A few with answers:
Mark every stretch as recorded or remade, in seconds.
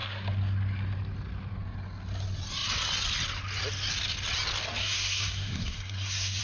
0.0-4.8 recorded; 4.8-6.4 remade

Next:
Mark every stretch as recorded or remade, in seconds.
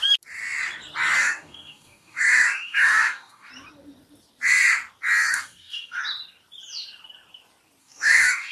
0.0-1.2 recorded; 1.2-3.5 remade; 3.5-5.3 recorded; 5.3-6.0 remade; 6.0-7.8 recorded; 7.8-8.5 remade